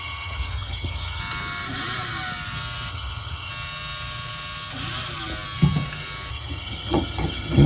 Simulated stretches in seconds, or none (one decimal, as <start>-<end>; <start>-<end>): 0.0-1.2; 2.9-3.5; 6.3-7.7